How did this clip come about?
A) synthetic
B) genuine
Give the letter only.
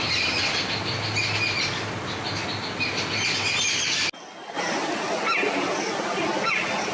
B